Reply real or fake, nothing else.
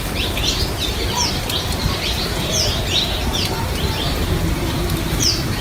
real